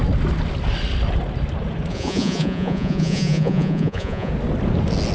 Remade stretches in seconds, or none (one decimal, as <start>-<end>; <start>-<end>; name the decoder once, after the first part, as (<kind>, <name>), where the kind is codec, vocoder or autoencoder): 1.9-4.3 (vocoder, Vocos)